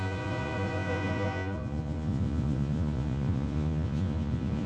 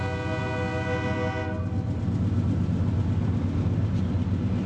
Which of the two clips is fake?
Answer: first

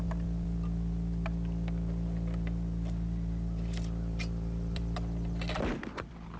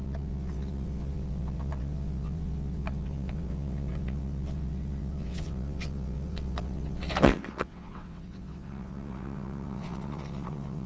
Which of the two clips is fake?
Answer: second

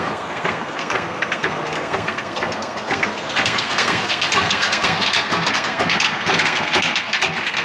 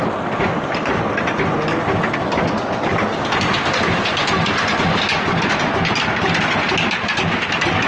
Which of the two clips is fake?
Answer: first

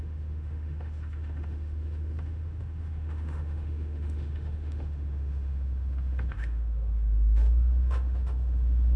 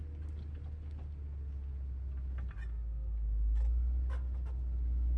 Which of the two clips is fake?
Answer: first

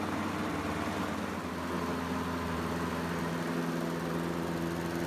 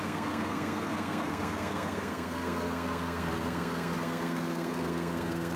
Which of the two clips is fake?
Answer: second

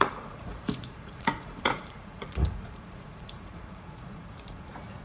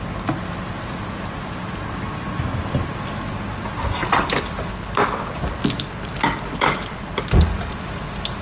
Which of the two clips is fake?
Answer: first